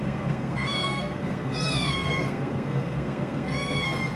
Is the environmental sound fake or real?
fake